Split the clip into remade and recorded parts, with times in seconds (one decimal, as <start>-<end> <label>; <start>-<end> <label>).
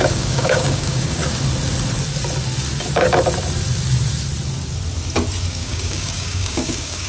0.0-1.2 remade; 1.2-5.5 recorded; 5.5-7.1 remade